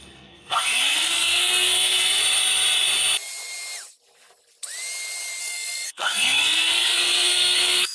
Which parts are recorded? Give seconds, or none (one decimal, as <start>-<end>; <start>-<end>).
2.2-5.4